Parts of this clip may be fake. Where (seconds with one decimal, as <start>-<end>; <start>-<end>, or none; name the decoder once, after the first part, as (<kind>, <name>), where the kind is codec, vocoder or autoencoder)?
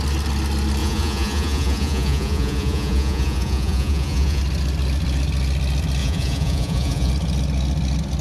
0.8-4.4 (vocoder, Vocos); 6.0-7.1